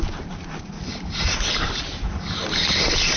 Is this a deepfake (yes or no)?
no